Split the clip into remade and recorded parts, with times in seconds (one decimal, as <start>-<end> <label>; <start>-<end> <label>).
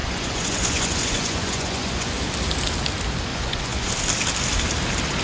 0.0-2.2 remade; 2.2-3.3 recorded; 3.3-3.9 remade; 3.9-5.2 recorded